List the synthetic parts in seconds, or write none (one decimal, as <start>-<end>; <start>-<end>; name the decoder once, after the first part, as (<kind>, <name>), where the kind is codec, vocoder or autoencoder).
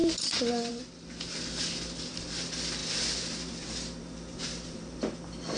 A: 0.0-0.7 (vocoder, Vocos)